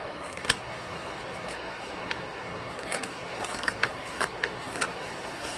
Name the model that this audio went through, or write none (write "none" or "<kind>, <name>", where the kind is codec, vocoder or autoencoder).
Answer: codec, SNAC